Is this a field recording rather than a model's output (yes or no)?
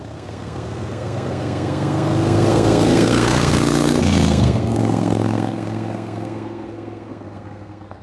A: no